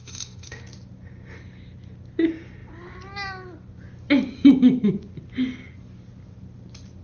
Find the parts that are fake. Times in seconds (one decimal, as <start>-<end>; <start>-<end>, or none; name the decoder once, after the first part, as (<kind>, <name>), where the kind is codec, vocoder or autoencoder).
0.0-0.6 (autoencoder, DAC-VAE)